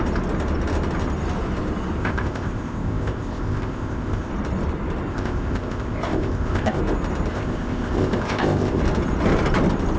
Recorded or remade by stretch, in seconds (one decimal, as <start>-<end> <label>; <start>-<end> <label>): 0.0-2.0 recorded; 2.0-4.3 remade; 4.3-5.1 recorded; 5.1-6.8 remade; 6.8-7.3 recorded; 7.3-8.8 remade; 8.8-10.0 recorded